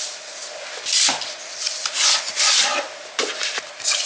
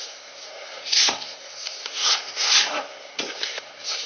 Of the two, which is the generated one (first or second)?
second